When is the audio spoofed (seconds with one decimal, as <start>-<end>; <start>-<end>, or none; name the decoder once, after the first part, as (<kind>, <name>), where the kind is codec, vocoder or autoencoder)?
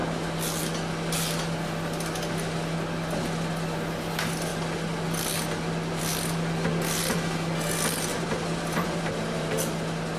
8.1-9.7 (vocoder, BigVGAN v2)